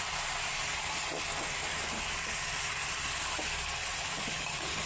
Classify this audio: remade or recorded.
recorded